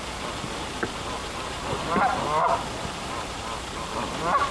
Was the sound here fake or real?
real